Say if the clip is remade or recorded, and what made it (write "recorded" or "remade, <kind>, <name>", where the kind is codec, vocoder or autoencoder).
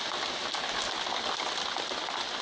recorded